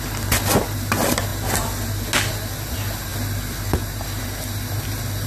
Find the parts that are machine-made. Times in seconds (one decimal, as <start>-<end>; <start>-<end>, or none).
none